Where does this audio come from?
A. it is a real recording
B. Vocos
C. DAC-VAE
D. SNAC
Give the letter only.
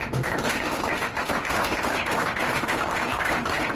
C